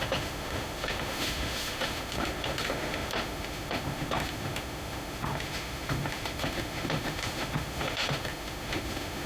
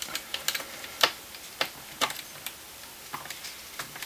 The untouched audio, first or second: second